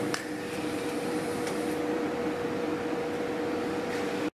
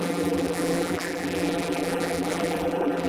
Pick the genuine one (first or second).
first